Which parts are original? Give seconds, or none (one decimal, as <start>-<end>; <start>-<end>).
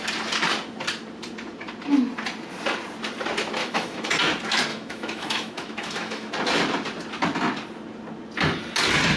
0.0-3.6; 4.1-4.7; 6.3-9.2